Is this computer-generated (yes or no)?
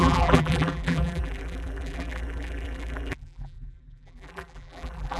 yes